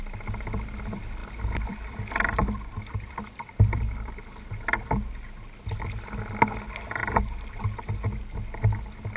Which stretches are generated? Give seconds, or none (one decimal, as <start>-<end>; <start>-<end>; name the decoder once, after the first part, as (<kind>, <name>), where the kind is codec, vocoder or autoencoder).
1.2-4.1 (vocoder, BigVGAN v2); 7.0-7.6